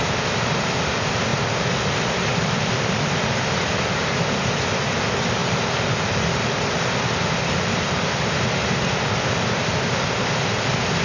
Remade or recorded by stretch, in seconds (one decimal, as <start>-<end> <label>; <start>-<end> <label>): 0.0-11.0 recorded

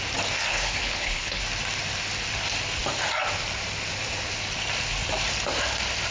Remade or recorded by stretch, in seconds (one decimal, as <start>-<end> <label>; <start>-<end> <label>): 0.0-0.5 recorded; 0.5-1.4 remade; 1.4-6.1 recorded

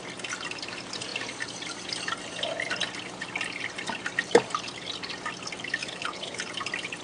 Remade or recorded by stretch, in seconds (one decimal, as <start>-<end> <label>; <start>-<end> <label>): 0.0-5.8 recorded; 5.8-6.5 remade; 6.5-7.0 recorded

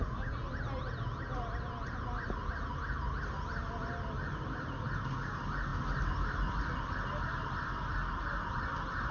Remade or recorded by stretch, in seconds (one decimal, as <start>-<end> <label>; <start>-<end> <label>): 0.0-9.1 recorded

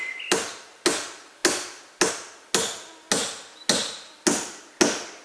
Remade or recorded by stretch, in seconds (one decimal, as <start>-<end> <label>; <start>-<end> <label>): 0.0-5.2 recorded

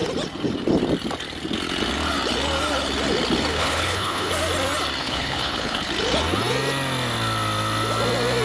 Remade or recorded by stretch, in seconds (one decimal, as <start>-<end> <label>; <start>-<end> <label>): 0.0-3.5 recorded; 3.5-4.3 remade; 4.3-5.0 recorded; 5.0-5.9 remade; 5.9-8.4 recorded